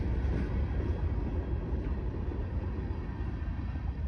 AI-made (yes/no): no